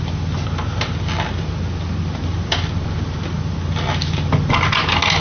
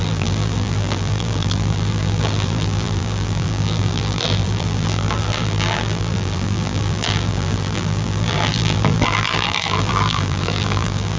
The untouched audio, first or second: first